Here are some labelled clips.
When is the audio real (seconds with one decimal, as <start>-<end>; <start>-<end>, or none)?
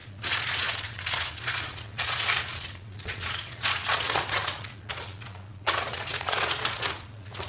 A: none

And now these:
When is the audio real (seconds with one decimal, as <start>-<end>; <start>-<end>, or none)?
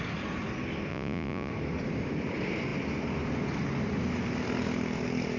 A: 0.0-0.9; 1.5-5.4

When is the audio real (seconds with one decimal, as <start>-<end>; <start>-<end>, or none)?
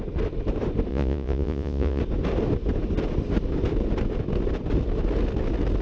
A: 0.0-0.9; 2.0-5.8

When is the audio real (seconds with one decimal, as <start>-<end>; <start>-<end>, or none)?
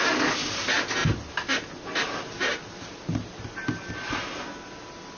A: 0.0-5.2